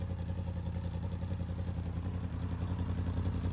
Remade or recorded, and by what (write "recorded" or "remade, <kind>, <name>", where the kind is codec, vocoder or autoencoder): recorded